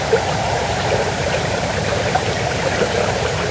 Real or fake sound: fake